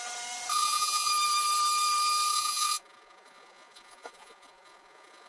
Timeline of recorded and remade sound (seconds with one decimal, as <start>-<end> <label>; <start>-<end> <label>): 0.0-0.5 recorded; 0.5-1.1 remade; 1.1-2.3 recorded; 2.3-5.3 remade

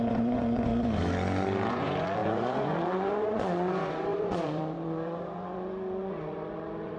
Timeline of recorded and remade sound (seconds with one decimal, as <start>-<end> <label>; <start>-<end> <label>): 0.0-0.7 remade; 0.7-1.7 recorded; 1.7-7.0 remade